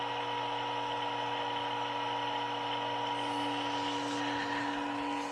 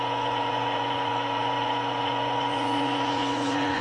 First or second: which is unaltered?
first